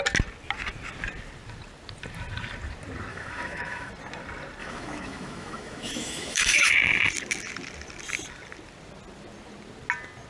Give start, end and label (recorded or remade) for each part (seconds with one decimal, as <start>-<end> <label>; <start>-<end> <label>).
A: 0.0-3.1 recorded; 3.1-3.9 remade; 3.9-4.6 recorded; 4.6-6.7 remade; 6.7-10.3 recorded